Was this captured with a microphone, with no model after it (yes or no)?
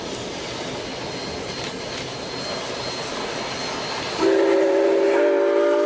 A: yes